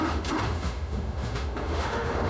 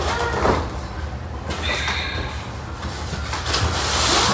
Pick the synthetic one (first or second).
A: first